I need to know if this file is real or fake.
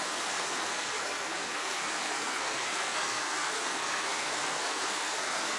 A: fake